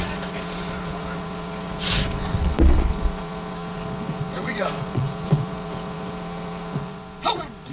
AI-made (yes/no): yes